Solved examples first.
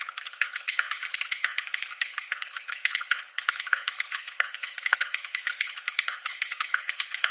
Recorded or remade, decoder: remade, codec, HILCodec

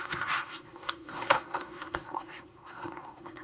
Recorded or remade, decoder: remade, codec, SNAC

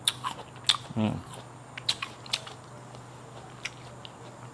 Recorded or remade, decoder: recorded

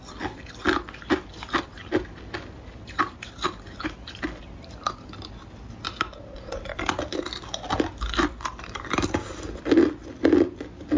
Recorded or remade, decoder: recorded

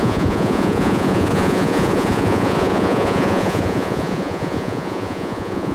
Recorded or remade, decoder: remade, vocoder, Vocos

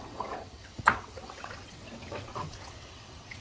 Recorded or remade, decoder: remade, vocoder, WaveNeXt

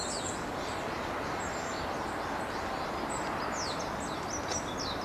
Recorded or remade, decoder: recorded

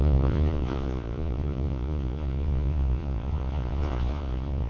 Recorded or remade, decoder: remade, vocoder, Vocos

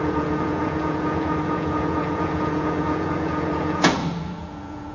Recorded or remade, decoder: remade, vocoder, Vocos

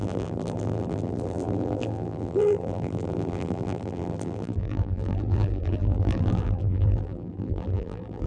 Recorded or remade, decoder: remade, vocoder, BigVGAN v2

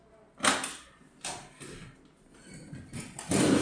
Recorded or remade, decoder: recorded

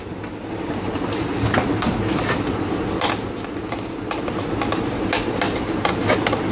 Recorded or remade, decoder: recorded